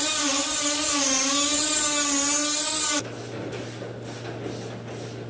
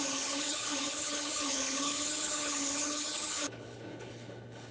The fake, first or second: second